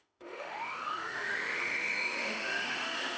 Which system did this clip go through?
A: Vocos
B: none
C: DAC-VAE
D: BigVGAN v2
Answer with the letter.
C